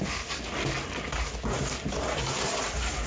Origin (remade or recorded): recorded